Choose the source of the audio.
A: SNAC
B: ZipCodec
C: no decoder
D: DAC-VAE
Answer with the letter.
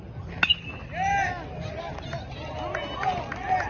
C